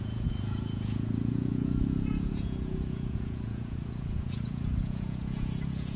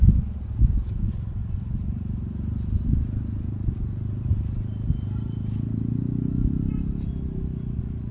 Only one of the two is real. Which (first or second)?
second